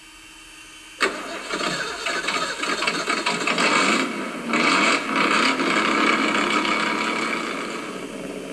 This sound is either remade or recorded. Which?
recorded